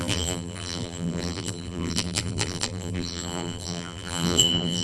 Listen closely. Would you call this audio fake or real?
fake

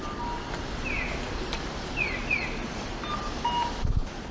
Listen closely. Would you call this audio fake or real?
real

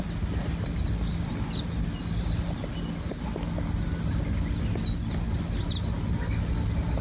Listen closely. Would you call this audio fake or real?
real